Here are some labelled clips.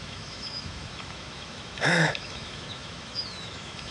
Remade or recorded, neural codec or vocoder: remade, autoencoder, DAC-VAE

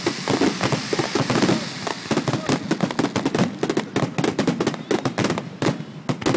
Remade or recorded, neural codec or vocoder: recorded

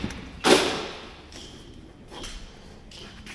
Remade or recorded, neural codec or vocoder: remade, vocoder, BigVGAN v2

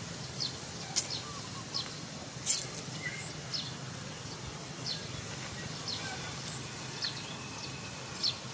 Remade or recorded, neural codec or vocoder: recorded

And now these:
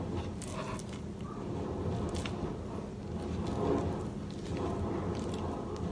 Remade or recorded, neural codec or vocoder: recorded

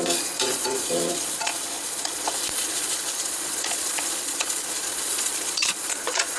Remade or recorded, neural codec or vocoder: remade, vocoder, Vocos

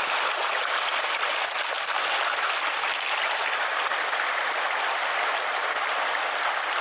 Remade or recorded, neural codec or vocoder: recorded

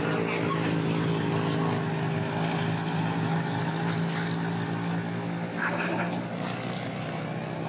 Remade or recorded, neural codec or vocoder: recorded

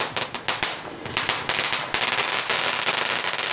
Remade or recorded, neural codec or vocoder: recorded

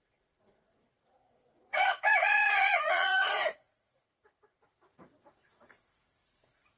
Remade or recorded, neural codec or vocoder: remade, vocoder, Vocos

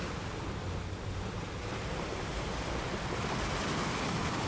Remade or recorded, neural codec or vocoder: recorded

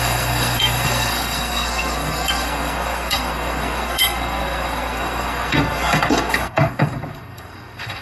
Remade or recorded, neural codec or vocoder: remade, codec, SNAC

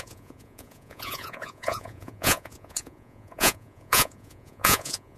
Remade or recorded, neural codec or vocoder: remade, vocoder, Vocos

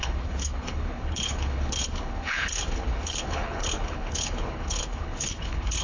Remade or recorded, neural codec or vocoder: remade, codec, HILCodec